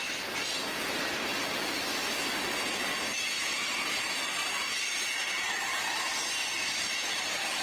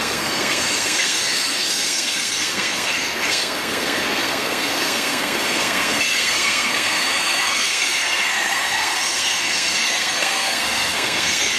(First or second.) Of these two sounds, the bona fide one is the first